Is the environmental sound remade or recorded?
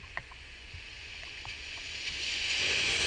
remade